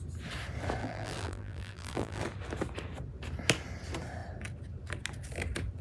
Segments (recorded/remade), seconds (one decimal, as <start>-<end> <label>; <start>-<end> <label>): 0.0-0.8 recorded; 0.8-2.2 remade; 2.2-5.8 recorded